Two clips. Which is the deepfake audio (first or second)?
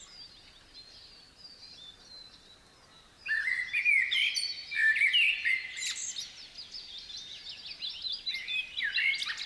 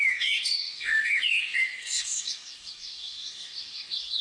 second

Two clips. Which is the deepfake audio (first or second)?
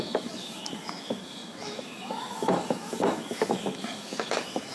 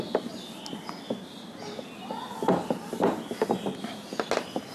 first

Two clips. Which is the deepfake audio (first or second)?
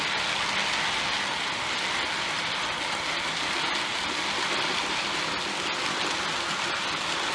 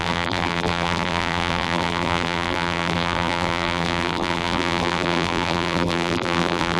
second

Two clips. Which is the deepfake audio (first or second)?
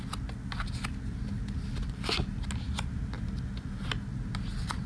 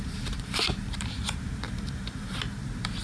second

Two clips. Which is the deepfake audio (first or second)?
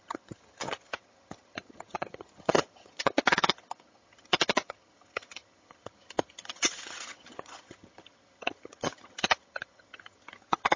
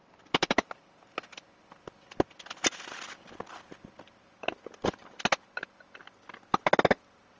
first